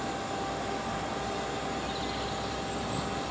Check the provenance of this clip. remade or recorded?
recorded